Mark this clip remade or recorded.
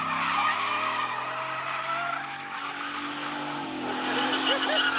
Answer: recorded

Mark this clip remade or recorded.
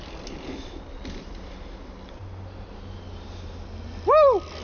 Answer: recorded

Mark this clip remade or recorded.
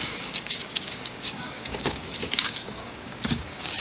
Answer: remade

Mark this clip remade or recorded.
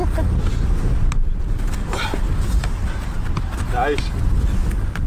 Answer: recorded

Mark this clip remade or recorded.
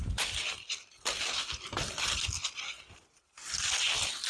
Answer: recorded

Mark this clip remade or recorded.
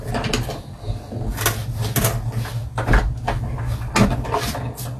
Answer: recorded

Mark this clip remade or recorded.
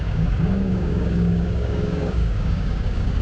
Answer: remade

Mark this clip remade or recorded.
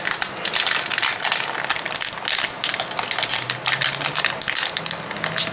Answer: recorded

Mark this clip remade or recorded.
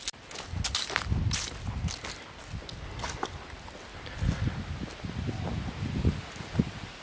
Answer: recorded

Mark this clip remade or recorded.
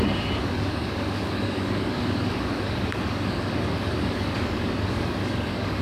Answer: remade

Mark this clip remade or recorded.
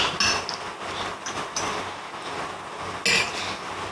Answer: recorded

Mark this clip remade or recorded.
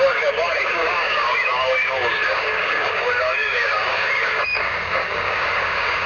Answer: remade